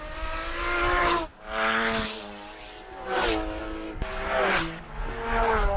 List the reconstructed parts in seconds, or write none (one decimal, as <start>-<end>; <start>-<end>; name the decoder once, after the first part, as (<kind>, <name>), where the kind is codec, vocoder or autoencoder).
none